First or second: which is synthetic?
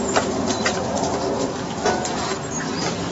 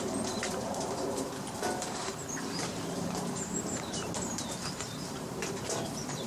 second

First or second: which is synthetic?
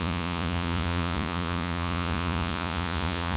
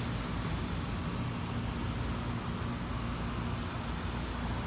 first